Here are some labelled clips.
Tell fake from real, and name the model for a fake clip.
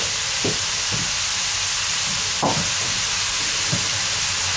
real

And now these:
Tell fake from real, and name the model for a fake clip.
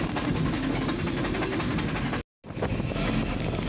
real